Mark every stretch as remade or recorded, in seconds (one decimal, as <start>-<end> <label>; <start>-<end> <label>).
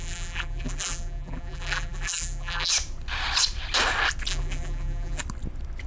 0.0-2.7 remade; 2.7-4.3 recorded; 4.3-5.2 remade; 5.2-5.9 recorded